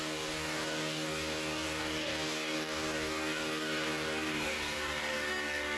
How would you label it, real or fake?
fake